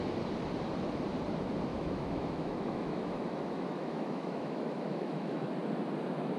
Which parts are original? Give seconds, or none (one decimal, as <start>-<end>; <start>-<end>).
0.0-1.7; 5.5-6.4